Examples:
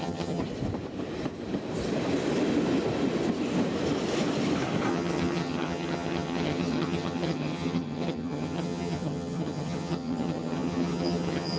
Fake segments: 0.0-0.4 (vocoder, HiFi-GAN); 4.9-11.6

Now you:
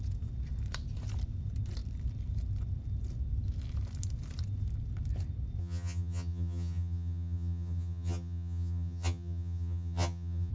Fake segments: 5.6-10.5 (vocoder, HiFi-GAN)

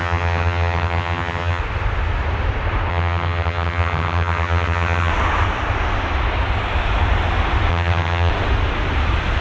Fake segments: 0.0-1.6 (vocoder, HiFi-GAN); 2.9-5.1; 7.7-8.3

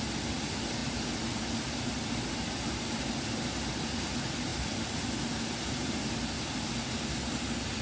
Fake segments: none

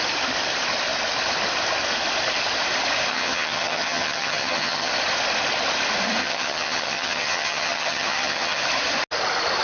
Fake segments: 3.1-4.9 (vocoder, HiFi-GAN); 6.2-8.6

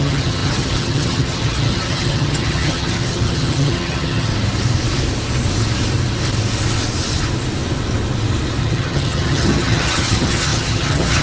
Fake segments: 0.0-4.3 (vocoder, HiFi-GAN); 8.6-11.2